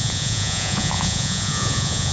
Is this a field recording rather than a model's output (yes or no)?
no